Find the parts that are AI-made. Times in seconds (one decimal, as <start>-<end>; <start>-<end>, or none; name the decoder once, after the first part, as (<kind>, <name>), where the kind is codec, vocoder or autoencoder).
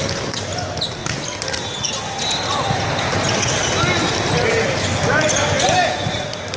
none